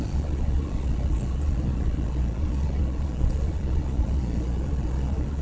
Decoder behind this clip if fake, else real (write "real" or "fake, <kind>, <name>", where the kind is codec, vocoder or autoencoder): fake, vocoder, Vocos